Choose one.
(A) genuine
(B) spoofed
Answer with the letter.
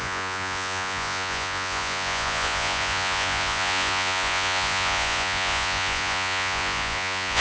B